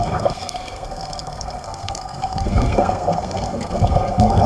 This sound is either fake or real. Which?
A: fake